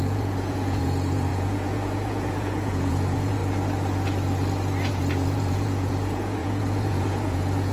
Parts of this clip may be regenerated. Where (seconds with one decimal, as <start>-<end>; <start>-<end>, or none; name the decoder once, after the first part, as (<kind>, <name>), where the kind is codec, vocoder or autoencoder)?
0.0-3.4 (vocoder, Vocos); 4.9-7.7